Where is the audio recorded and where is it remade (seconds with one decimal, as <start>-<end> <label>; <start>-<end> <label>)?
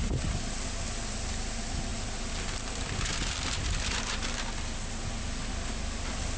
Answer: 0.0-6.4 recorded